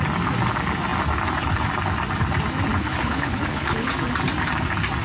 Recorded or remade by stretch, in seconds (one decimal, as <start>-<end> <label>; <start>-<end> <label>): 0.0-2.7 recorded; 2.7-3.9 remade; 3.9-5.0 recorded